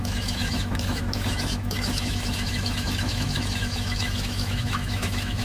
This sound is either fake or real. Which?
fake